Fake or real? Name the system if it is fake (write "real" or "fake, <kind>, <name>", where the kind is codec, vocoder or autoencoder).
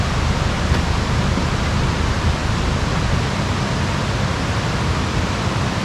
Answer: real